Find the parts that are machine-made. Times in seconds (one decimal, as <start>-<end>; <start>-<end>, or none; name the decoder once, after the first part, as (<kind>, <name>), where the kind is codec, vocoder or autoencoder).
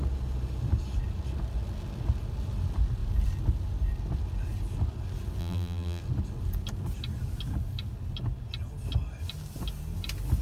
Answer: 5.4-6.0 (vocoder, BigVGAN v2)